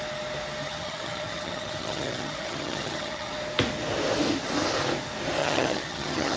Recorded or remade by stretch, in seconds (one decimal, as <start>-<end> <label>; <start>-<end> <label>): 0.0-0.6 recorded; 0.6-3.3 remade; 3.3-5.4 recorded; 5.4-6.4 remade